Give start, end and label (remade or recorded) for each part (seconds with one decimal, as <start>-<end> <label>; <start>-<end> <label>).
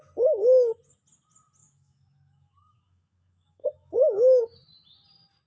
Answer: 0.0-1.6 recorded; 1.6-4.4 remade; 4.4-5.5 recorded